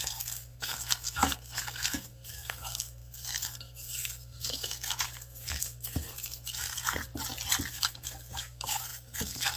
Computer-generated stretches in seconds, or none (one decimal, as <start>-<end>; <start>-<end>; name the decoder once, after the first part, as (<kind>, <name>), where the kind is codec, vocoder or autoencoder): 0.0-7.0 (codec, SNAC); 7.7-9.6